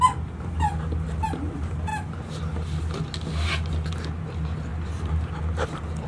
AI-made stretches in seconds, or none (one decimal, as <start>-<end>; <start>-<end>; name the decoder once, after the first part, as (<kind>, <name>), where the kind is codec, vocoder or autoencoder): 4.7-5.4 (vocoder, BigVGAN v2)